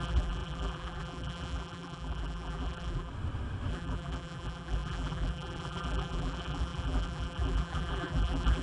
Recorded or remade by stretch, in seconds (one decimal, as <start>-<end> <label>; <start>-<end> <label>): 0.0-3.1 remade; 3.1-3.7 recorded; 3.7-8.6 remade